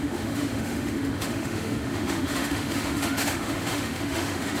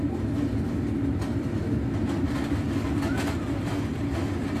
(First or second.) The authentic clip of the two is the second